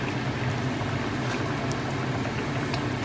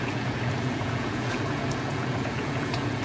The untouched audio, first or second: first